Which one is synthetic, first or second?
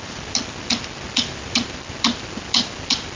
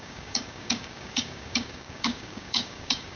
second